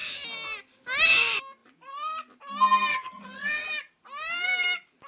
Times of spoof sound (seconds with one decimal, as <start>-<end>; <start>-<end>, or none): 2.9-3.7